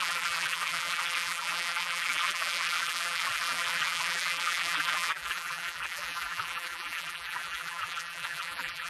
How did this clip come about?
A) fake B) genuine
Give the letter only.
A